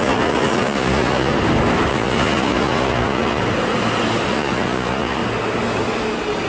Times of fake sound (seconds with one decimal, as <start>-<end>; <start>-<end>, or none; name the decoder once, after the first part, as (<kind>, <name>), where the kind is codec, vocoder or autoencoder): 0.0-1.3 (vocoder, Vocos); 1.9-3.4; 4.3-5.2

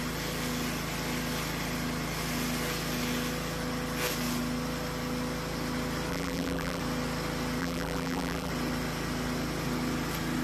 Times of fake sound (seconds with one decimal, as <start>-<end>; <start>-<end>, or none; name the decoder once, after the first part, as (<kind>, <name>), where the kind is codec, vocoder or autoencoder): 6.1-6.8 (vocoder, BigVGAN v2); 7.6-8.5

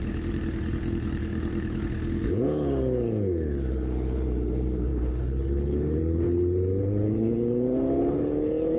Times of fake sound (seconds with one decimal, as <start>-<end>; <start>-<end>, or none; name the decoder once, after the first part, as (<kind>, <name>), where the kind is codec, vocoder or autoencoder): 0.0-8.8 (codec, HILCodec)

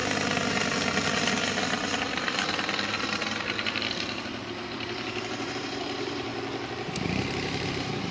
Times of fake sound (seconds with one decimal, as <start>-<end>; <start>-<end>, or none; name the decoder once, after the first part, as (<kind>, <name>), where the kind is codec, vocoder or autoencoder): 2.0-6.3 (vocoder, BigVGAN v2); 7.0-8.1